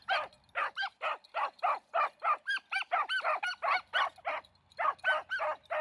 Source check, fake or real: real